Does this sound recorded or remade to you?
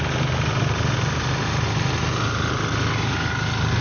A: recorded